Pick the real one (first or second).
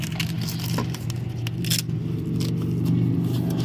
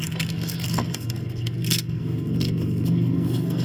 first